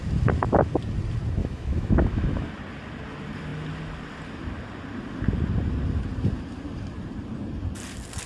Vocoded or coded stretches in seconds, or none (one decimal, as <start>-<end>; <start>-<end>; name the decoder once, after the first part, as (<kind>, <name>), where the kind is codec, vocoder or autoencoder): 1.4-2.5 (autoencoder, DAC-VAE)